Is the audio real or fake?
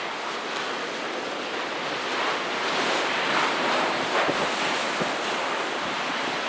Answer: real